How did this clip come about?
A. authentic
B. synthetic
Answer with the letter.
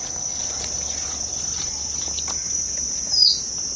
A